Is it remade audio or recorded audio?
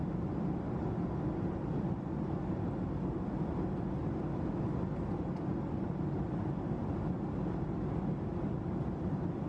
recorded